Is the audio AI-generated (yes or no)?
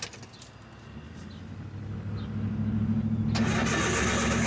no